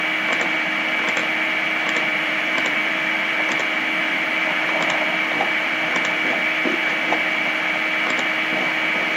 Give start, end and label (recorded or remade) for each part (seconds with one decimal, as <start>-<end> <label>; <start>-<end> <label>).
0.0-2.1 recorded; 2.1-3.6 remade; 3.6-4.0 recorded; 4.0-5.7 remade; 5.7-9.2 recorded